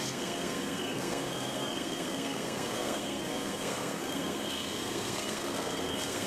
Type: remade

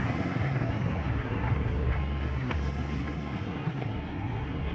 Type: remade